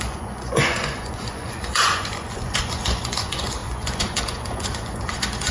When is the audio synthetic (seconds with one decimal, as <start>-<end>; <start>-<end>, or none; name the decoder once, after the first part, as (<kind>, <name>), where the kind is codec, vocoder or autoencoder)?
0.0-5.5 (vocoder, Vocos)